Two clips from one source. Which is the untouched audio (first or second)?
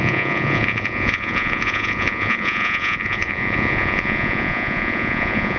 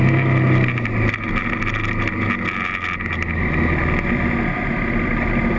second